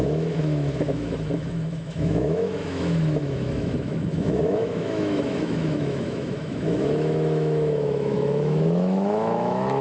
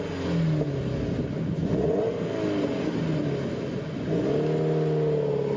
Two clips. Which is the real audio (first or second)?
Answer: second